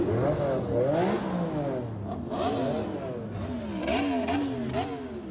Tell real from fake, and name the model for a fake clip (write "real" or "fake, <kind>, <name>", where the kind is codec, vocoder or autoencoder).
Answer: real